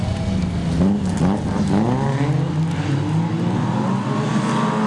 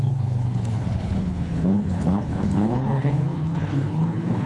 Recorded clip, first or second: first